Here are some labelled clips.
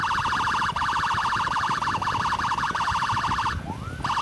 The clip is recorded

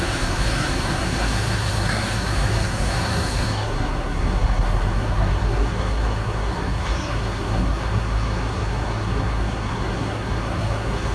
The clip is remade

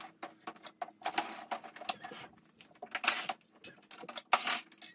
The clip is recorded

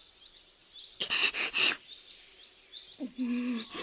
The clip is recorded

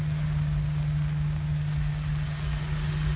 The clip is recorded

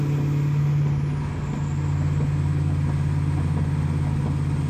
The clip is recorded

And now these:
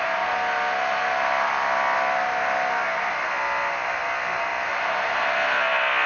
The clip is recorded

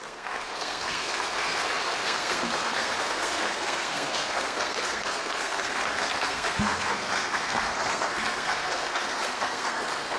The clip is remade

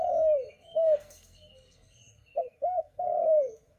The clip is remade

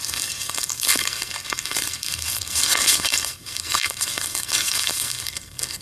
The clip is remade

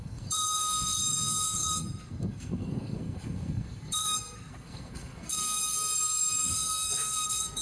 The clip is remade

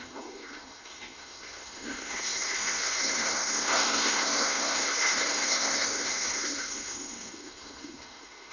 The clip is remade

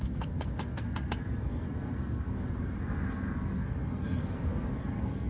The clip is remade